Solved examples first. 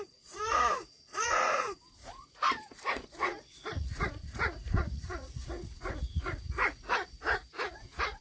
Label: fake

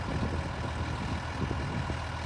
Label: real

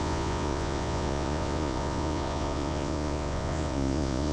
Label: fake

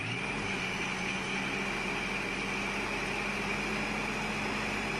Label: real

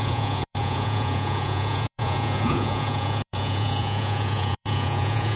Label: fake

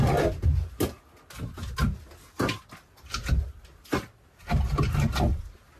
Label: real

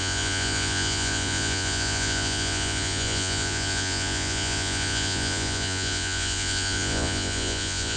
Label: fake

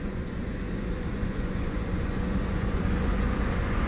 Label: fake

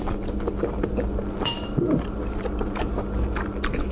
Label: real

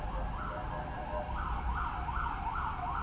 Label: real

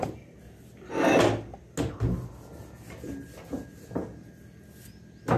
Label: real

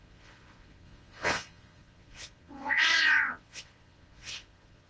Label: fake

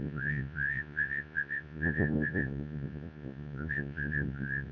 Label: fake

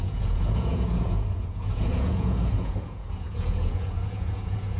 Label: fake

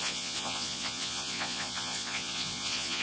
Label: fake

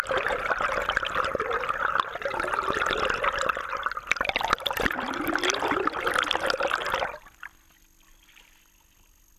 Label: real